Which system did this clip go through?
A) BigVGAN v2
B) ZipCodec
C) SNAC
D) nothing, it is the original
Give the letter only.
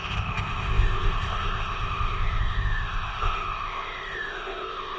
B